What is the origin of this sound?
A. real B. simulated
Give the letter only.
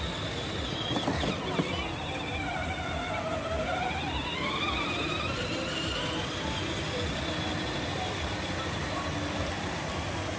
A